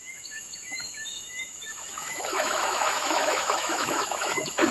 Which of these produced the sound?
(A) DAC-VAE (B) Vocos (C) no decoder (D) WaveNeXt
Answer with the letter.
A